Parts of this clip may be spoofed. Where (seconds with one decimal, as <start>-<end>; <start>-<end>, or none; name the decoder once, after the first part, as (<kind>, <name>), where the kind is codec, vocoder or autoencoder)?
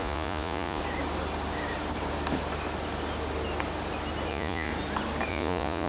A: 0.0-0.8 (vocoder, Vocos); 4.3-4.7; 5.3-5.9